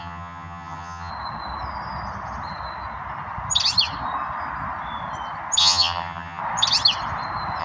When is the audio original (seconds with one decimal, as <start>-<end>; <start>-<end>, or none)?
1.1-5.6; 6.4-7.6